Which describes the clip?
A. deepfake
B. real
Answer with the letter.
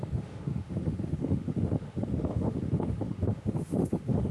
A